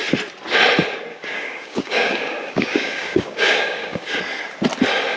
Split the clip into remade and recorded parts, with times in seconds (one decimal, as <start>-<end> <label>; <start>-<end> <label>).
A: 0.0-1.1 recorded; 1.1-4.2 remade; 4.2-5.2 recorded